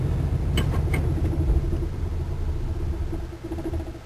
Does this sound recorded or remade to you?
recorded